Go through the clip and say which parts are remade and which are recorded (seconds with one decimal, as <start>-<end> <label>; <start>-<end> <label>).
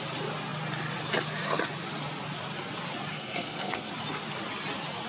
0.0-3.1 recorded; 3.1-3.9 remade; 3.9-5.1 recorded